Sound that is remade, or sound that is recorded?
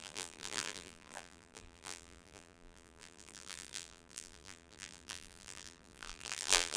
remade